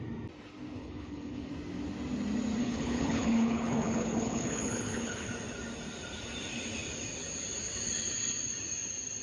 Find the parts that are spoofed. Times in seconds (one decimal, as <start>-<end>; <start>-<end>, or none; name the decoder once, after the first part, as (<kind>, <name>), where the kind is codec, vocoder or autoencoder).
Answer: 0.8-1.5 (codec, HILCodec); 2.6-5.3